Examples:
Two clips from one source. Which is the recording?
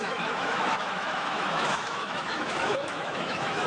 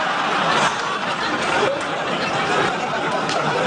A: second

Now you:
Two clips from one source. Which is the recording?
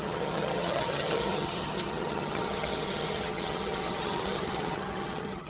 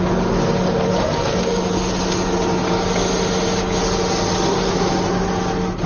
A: second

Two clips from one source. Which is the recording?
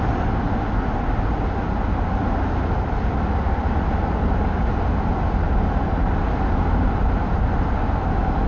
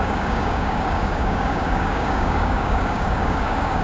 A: first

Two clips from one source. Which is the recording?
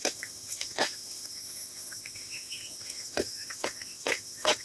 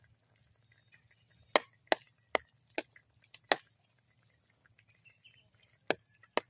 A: second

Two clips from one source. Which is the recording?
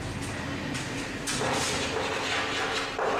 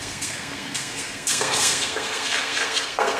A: first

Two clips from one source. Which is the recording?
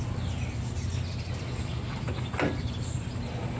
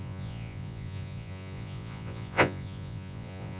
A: first